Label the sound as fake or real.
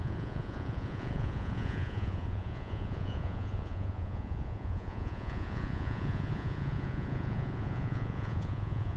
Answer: fake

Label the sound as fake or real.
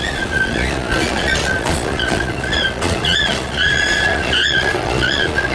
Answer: fake